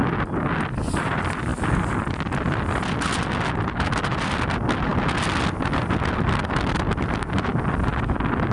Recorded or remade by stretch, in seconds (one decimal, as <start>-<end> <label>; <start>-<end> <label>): 0.0-8.5 recorded